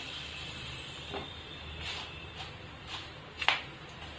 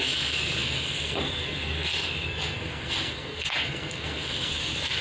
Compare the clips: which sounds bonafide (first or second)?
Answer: first